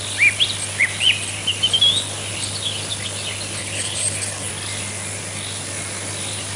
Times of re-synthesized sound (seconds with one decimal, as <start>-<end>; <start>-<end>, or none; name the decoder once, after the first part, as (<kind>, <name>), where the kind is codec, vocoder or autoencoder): 3.6-4.5 (codec, HILCodec)